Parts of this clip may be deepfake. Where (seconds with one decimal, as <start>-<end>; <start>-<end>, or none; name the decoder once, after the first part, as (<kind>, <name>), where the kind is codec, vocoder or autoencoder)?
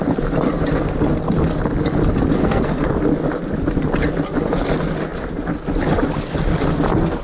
2.4-3.0 (codec, SNAC)